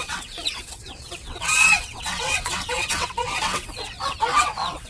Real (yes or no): no